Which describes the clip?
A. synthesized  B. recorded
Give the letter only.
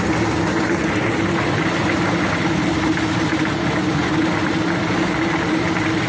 B